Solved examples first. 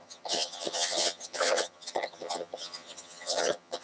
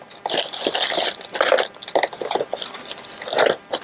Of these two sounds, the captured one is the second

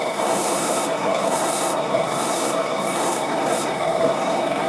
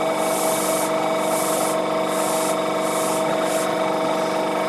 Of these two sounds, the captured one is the second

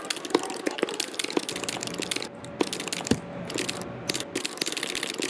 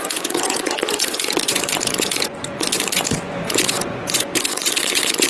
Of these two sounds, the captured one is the first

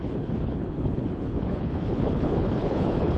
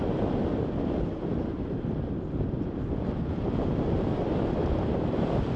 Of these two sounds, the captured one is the second